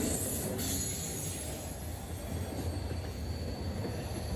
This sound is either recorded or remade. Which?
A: recorded